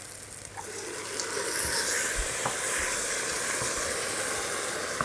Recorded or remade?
recorded